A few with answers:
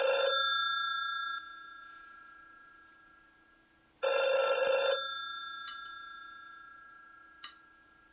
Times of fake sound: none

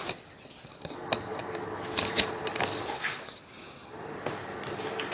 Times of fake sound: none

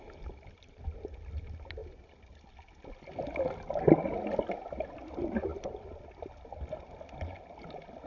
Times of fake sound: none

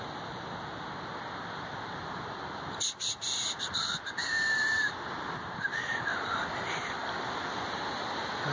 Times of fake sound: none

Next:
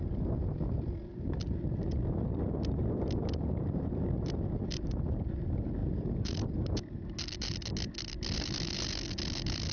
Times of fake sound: none